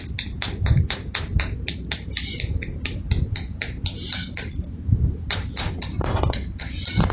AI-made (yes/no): no